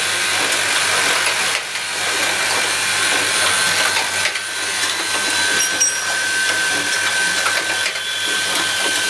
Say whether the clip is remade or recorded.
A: recorded